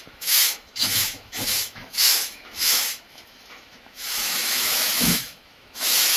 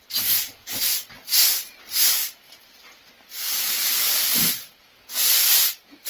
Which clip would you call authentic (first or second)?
second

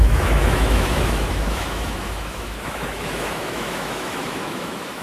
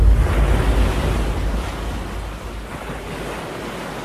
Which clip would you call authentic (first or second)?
second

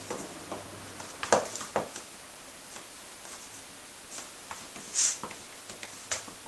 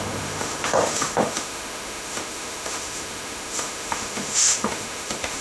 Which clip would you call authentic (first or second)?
first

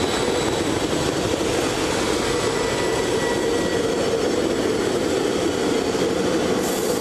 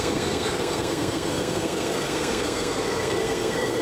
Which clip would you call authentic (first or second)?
first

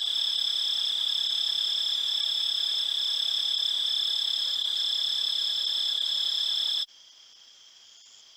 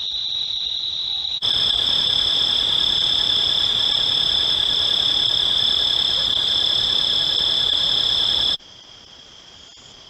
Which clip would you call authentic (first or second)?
first